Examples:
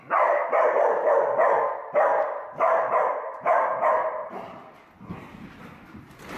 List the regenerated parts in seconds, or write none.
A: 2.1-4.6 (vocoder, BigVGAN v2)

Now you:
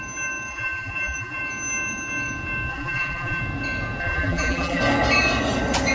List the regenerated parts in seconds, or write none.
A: 0.5-1.4 (vocoder, BigVGAN v2); 2.7-3.4; 4.0-4.8

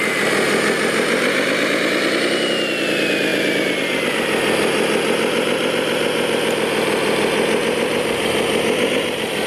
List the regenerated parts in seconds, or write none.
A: none

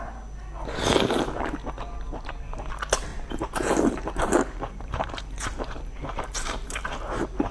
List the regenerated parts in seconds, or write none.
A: 2.1-2.6 (vocoder, BigVGAN v2); 3.1-7.5